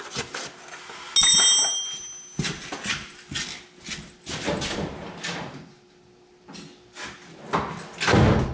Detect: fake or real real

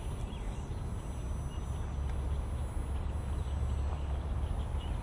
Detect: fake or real real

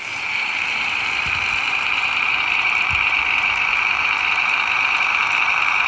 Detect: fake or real fake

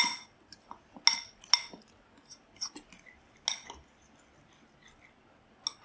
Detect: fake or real real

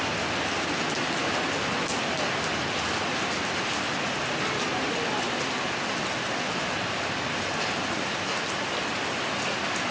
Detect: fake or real real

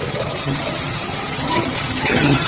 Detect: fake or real fake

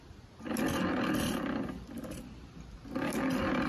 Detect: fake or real real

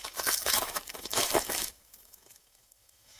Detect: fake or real fake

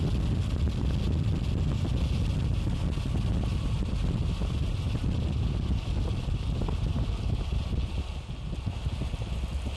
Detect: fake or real real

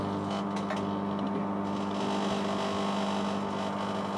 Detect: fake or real real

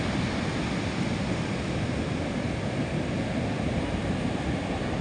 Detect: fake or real real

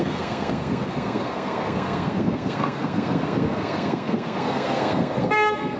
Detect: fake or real fake